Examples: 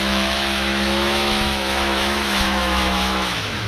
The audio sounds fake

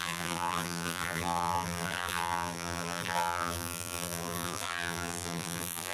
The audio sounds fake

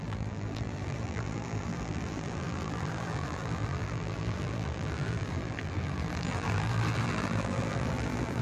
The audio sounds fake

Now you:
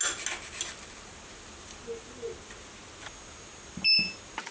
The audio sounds real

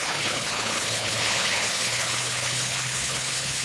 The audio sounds fake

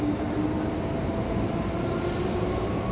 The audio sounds real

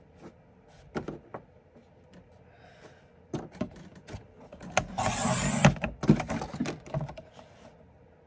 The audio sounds real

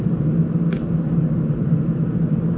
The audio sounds real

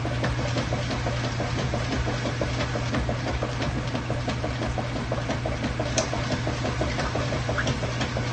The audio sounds real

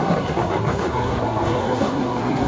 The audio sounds fake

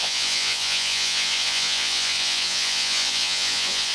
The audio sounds fake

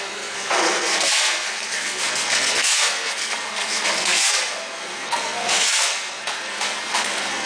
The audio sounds fake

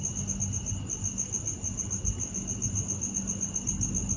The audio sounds real